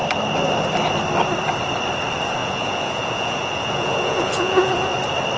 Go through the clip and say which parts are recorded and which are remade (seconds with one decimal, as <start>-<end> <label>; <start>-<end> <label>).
0.0-2.4 recorded; 2.4-4.7 remade; 4.7-5.4 recorded